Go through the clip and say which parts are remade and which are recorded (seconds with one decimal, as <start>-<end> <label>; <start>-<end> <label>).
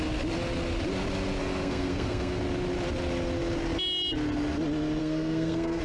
0.0-1.4 recorded; 1.4-2.4 remade; 2.4-5.0 recorded; 5.0-5.8 remade